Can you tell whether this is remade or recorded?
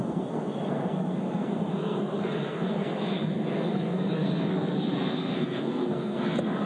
remade